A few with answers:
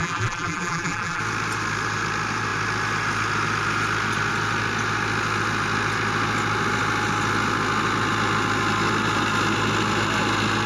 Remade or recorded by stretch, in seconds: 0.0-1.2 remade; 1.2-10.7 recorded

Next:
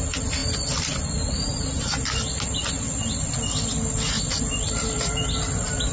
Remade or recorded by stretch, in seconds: 0.0-5.9 recorded

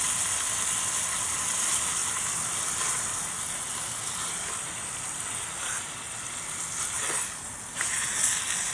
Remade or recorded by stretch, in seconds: 0.0-8.7 recorded

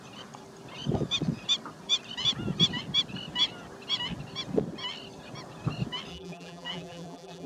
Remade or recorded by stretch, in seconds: 0.0-6.1 recorded; 6.1-7.5 remade